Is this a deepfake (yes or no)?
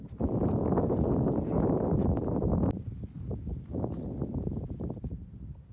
no